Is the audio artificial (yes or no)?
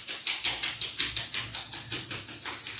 no